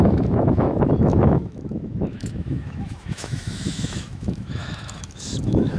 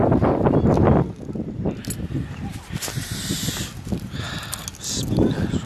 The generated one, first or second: first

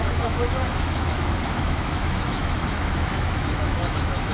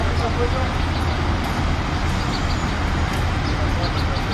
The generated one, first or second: first